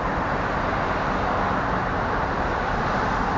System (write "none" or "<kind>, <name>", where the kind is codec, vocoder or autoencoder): none